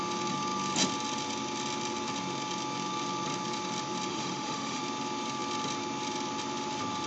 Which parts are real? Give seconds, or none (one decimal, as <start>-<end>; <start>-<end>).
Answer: 0.0-4.1; 4.8-7.1